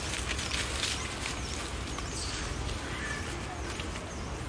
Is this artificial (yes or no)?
no